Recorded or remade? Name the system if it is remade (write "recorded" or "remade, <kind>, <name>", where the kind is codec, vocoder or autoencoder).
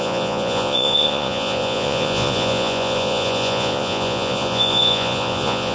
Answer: remade, vocoder, Vocos